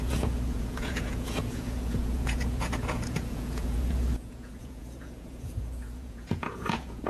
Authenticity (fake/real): fake